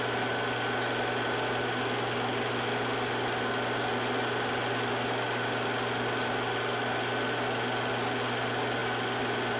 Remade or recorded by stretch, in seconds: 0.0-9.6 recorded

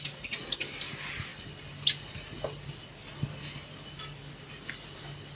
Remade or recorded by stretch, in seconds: 0.0-5.3 recorded